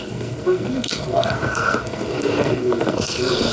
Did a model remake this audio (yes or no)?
yes